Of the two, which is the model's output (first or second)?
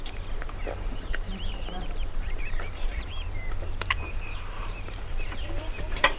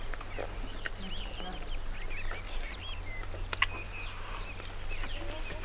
first